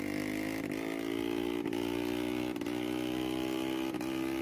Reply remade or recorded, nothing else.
recorded